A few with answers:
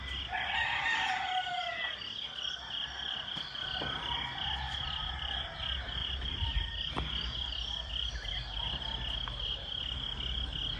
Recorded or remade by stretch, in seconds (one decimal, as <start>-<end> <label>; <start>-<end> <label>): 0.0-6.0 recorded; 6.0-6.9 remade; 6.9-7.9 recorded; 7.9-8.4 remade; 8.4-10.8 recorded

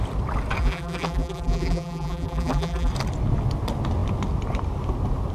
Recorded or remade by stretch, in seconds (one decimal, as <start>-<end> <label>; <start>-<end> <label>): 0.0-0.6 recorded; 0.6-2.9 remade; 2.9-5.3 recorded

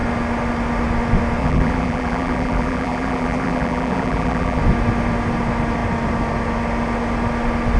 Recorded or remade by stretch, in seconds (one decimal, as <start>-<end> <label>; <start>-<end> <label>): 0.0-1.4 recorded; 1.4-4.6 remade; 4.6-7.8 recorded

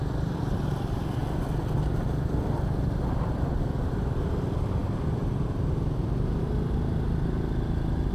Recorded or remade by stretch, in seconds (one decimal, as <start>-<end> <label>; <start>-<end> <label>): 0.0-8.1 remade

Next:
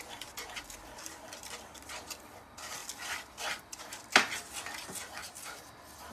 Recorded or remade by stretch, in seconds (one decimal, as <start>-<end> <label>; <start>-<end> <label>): 0.0-1.1 recorded; 1.1-2.0 remade; 2.0-2.8 recorded; 2.8-3.6 remade; 3.6-5.2 recorded; 5.2-6.1 remade